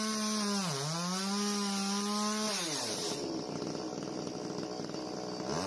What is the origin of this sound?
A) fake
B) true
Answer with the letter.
B